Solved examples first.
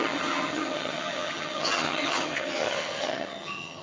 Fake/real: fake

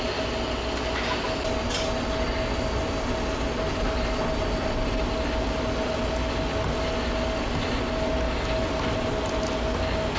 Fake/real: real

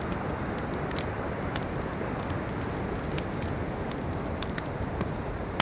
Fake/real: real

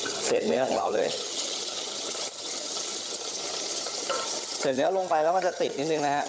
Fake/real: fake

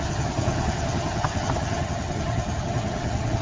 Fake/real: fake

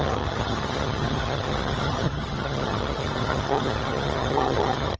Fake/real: fake